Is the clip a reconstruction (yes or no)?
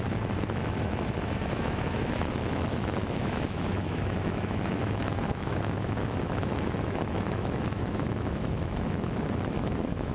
yes